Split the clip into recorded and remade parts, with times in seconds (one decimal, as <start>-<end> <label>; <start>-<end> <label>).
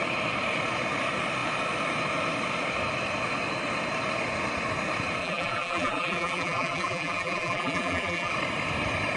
0.0-5.2 recorded; 5.2-8.3 remade; 8.3-9.2 recorded